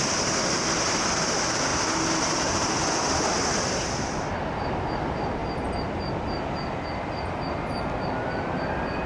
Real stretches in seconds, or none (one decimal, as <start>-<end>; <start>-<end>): 0.0-9.1